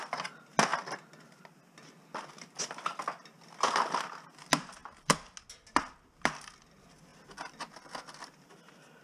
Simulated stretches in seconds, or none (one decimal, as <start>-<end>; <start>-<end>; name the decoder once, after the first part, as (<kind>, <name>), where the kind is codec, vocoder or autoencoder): none